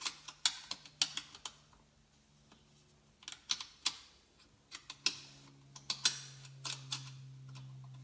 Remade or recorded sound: recorded